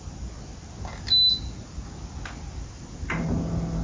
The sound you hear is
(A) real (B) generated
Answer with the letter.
A